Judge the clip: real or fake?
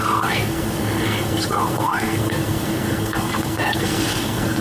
fake